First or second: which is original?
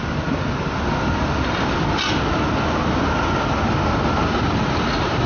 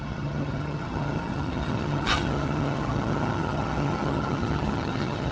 first